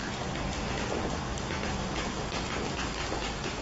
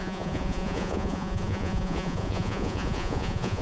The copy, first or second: second